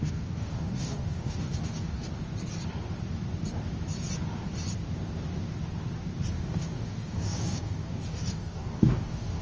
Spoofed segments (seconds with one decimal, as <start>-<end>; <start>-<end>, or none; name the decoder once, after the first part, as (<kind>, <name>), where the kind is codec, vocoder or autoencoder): 0.0-2.1 (codec, DAC); 6.3-9.4

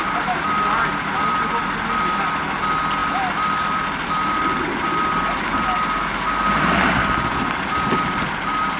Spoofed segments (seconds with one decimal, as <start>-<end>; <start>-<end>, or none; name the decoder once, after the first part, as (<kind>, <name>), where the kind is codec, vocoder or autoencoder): 0.0-8.8 (vocoder, BigVGAN v2)

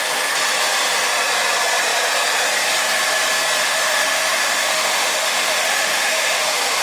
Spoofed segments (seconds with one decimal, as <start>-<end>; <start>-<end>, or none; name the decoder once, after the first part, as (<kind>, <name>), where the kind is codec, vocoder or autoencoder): 3.6-6.8 (autoencoder, DAC-VAE)